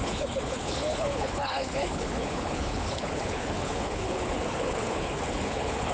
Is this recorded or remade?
remade